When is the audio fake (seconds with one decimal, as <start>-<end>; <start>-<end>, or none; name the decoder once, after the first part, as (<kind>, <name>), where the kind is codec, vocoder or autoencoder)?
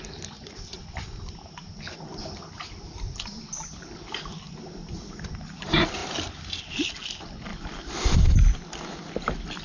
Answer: none